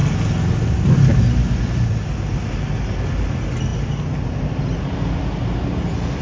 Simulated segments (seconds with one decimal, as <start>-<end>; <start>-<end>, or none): none